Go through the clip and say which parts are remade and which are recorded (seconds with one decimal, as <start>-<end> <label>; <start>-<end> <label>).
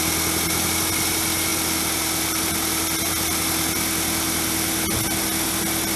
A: 0.0-6.0 recorded